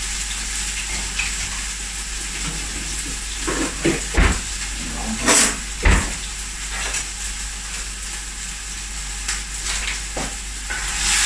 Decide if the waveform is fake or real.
real